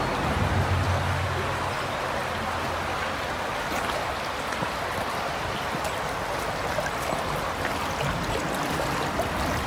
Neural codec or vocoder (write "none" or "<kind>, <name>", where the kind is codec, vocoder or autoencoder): none